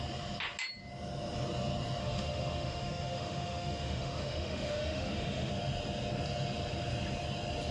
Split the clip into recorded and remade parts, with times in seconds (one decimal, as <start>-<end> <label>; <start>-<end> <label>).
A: 0.0-2.0 recorded; 2.0-5.5 remade; 5.5-7.7 recorded